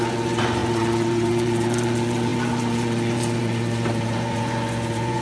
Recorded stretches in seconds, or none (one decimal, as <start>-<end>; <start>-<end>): none